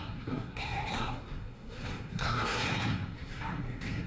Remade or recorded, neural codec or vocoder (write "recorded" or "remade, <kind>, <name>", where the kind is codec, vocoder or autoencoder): remade, codec, SNAC